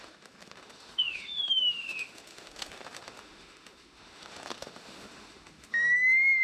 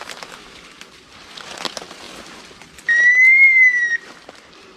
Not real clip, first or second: first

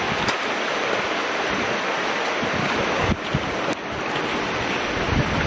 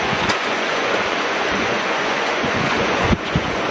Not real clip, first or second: second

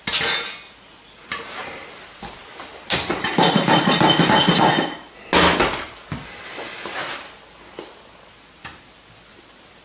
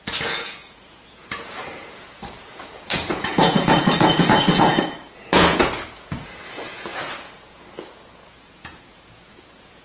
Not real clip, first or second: second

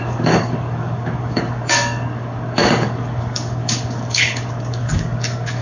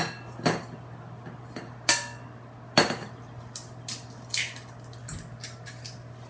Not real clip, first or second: first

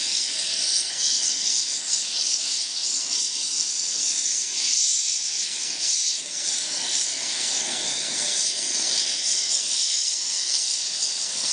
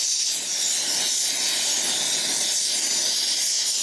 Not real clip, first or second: first